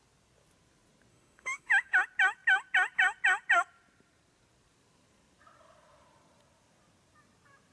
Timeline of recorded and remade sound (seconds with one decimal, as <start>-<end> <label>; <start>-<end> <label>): 0.0-1.1 recorded; 1.1-1.9 remade; 1.9-7.7 recorded